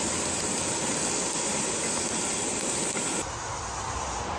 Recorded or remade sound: recorded